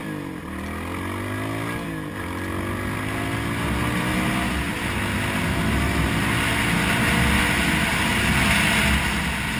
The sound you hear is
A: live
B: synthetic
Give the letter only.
A